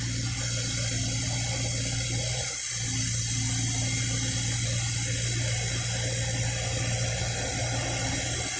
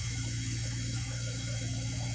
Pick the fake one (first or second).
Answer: second